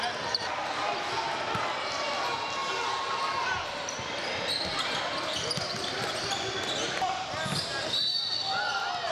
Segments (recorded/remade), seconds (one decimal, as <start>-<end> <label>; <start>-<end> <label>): 0.0-9.1 recorded